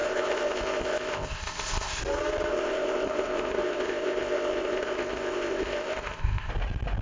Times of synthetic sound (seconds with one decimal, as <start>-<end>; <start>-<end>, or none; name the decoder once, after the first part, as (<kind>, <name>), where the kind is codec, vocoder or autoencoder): 0.0-2.0 (codec, ZipCodec); 2.5-6.5